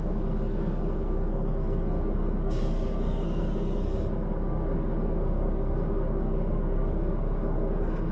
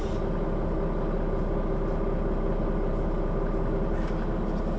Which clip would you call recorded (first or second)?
second